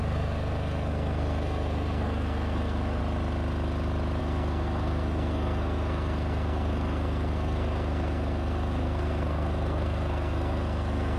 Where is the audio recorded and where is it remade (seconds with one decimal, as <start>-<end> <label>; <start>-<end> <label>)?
0.0-3.0 remade; 3.0-4.2 recorded; 4.2-11.2 remade